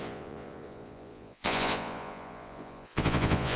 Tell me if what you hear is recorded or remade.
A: remade